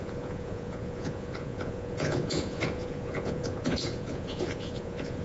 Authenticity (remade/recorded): remade